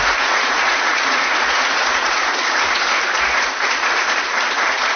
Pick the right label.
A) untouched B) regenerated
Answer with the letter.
B